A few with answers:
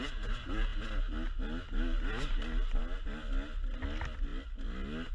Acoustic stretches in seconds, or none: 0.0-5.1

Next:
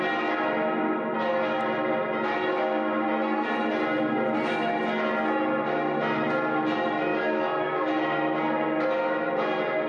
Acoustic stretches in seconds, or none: 0.0-7.1; 7.9-9.9

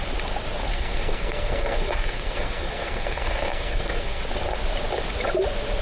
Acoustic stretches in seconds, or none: 0.0-0.7; 4.2-5.8

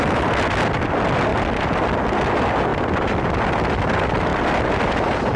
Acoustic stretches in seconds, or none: 0.0-5.4

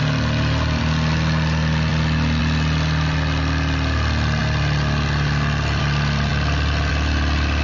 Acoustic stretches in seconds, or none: 0.0-7.6